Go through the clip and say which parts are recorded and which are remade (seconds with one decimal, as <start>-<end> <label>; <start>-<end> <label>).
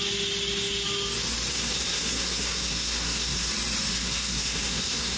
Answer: 0.0-1.5 recorded; 1.5-3.5 remade; 3.5-3.9 recorded; 3.9-5.2 remade